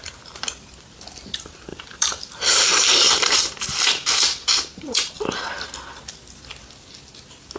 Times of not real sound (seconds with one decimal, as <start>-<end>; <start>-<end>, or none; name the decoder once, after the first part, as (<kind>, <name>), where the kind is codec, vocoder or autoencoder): 1.7-5.1 (vocoder, BigVGAN v2)